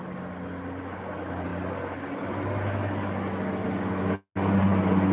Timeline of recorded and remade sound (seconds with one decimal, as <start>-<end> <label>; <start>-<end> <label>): 0.0-5.1 recorded